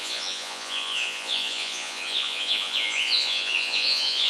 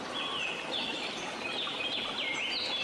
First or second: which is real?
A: second